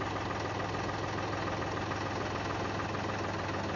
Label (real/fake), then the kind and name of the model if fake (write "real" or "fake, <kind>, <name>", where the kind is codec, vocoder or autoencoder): real